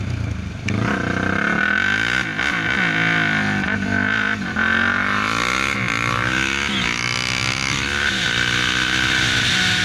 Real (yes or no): yes